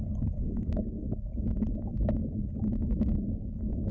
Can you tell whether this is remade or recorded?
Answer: remade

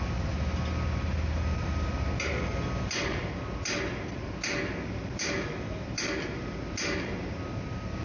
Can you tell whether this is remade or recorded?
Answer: recorded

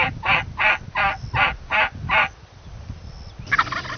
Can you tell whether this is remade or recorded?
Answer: recorded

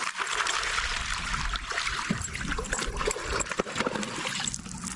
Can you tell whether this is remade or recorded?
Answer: recorded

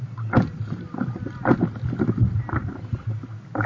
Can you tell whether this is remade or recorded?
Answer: recorded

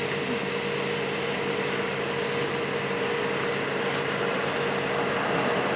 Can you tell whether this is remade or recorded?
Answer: recorded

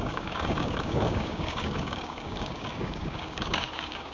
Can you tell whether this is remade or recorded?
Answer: remade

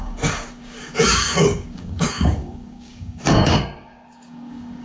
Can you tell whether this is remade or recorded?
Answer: remade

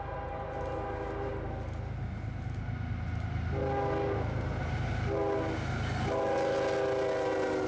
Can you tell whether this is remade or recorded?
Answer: recorded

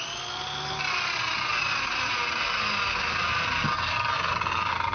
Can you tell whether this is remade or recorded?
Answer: recorded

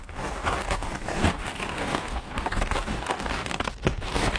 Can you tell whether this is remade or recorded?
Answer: remade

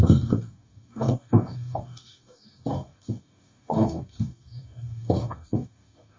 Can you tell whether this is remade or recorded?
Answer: remade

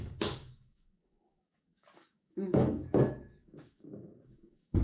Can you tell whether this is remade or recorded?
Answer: remade